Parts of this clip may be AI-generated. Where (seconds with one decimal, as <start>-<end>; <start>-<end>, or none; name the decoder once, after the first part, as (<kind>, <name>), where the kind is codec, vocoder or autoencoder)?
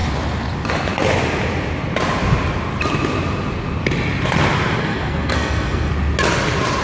4.8-5.9 (codec, SNAC)